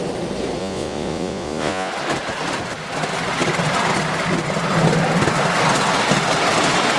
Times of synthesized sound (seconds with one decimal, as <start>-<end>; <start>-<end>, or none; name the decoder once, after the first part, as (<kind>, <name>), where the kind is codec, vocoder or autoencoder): 0.6-1.9 (vocoder, Vocos)

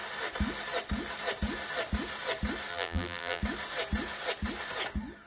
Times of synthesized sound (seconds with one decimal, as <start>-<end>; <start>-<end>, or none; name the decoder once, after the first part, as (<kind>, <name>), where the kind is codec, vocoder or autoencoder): 2.7-3.4 (vocoder, BigVGAN v2)

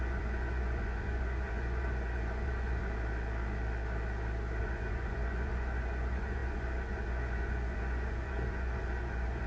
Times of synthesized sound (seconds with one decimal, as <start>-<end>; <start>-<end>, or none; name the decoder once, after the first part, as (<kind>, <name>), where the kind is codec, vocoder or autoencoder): 0.0-2.8 (vocoder, Vocos); 4.6-9.5